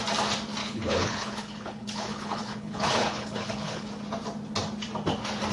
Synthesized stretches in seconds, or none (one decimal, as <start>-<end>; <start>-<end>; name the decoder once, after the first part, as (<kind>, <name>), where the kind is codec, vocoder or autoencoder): 0.6-3.9 (codec, HILCodec)

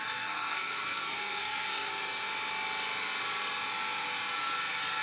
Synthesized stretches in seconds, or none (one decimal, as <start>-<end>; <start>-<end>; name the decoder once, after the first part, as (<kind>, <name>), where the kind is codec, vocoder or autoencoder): 0.0-1.9 (codec, SNAC)

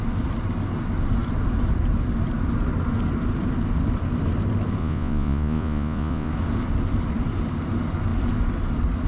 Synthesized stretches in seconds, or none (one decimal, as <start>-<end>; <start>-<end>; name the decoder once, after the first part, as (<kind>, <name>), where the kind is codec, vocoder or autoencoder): 4.8-6.3 (vocoder, Vocos)

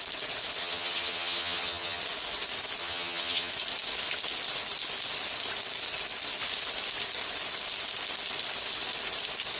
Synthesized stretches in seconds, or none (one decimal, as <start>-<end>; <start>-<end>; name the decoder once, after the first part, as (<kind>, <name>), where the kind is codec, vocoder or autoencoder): 0.6-2.0 (vocoder, HiFi-GAN); 2.8-3.5

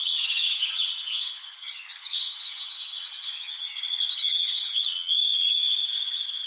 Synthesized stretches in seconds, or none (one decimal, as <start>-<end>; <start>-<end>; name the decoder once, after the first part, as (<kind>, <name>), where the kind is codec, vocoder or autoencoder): 0.0-6.5 (vocoder, HiFi-GAN)

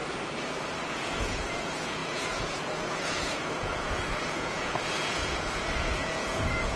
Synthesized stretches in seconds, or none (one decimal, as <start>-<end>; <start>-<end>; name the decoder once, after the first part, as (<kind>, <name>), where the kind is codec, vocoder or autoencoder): 0.9-6.8 (vocoder, Vocos)

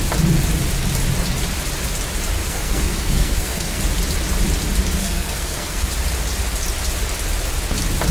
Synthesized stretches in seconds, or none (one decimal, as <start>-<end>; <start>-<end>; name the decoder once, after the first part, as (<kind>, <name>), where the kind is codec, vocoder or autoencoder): 2.4-3.8 (codec, SNAC); 5.0-5.9